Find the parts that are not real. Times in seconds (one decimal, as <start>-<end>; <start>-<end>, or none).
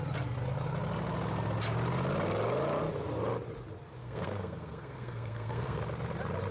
4.0-5.8